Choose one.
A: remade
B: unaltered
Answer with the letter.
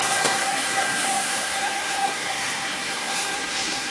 A